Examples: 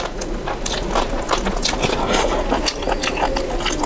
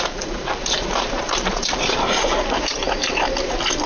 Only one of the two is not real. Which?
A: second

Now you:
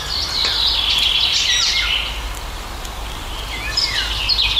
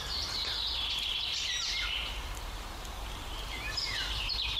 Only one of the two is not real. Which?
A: second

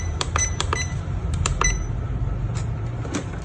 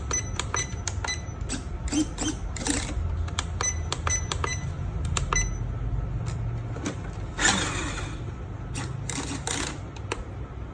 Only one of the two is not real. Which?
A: first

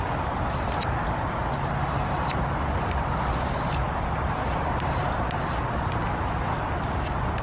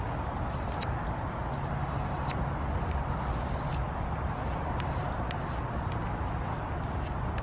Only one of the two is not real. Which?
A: first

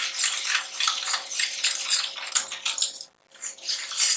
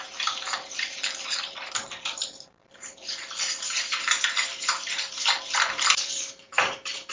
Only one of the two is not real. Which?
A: second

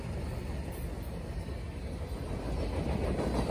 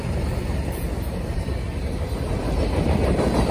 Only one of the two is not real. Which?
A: second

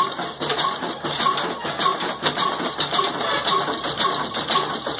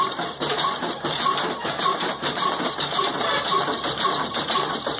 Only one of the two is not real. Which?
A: second